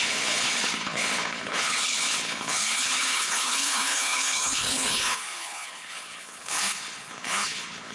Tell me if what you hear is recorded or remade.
remade